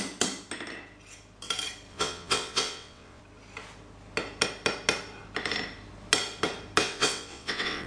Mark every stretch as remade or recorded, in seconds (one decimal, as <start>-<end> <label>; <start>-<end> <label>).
0.0-1.9 recorded; 1.9-3.2 remade; 3.2-6.8 recorded; 6.8-7.9 remade